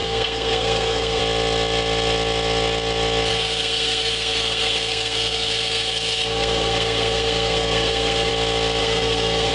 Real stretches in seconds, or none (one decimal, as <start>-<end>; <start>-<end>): 1.2-3.3; 8.3-8.8